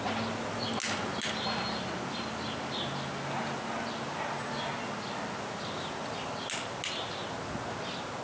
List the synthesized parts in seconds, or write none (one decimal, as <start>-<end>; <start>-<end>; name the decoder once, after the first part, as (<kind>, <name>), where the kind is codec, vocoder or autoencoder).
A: none